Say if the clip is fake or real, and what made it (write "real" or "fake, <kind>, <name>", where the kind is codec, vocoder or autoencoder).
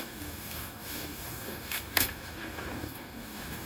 fake, codec, DAC